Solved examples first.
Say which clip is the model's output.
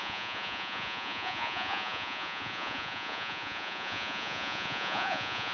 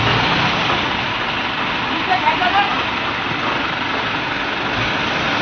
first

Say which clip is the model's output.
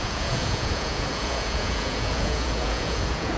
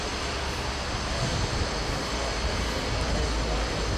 first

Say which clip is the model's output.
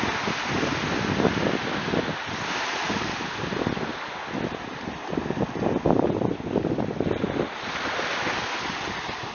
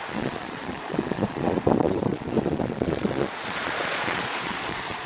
second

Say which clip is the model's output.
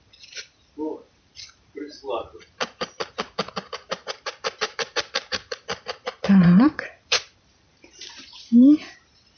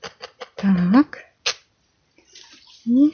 first